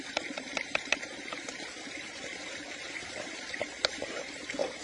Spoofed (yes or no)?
yes